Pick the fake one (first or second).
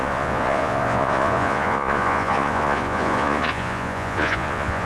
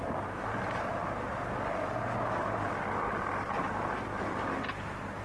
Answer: first